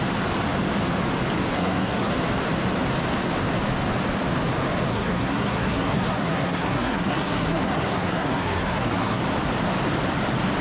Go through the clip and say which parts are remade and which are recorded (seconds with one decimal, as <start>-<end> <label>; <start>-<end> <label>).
0.0-1.5 recorded; 1.5-2.1 remade; 2.1-4.9 recorded; 4.9-9.2 remade; 9.2-10.6 recorded